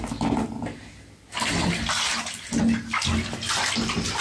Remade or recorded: recorded